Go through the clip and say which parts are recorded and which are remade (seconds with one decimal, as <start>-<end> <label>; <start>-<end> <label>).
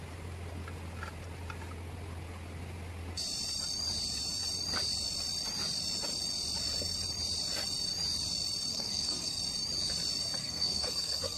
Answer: 0.0-8.7 recorded; 8.7-9.4 remade; 9.4-10.4 recorded; 10.4-11.4 remade